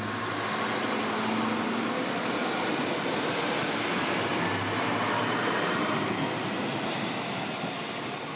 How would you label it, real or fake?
real